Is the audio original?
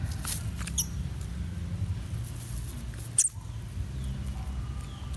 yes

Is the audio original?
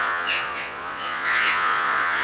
no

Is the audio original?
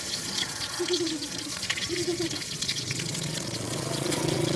no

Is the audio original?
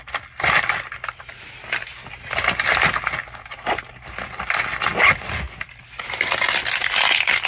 yes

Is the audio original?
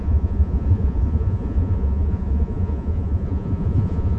no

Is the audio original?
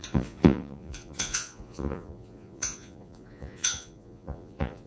no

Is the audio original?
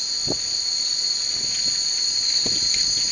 yes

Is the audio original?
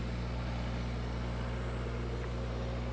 yes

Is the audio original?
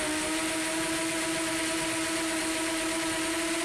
yes